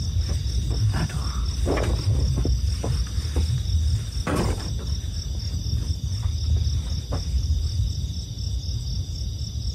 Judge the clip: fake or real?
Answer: real